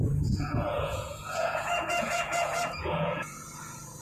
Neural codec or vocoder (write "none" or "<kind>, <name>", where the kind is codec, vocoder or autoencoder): vocoder, Vocos